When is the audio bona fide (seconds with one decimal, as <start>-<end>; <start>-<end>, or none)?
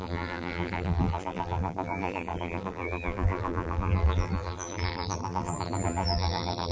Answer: none